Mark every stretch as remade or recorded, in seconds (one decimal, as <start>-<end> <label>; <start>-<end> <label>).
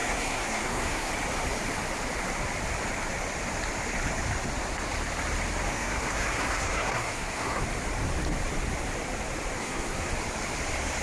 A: 0.0-1.1 remade; 1.1-5.7 recorded; 5.7-7.6 remade; 7.6-9.6 recorded; 9.6-10.1 remade; 10.1-11.0 recorded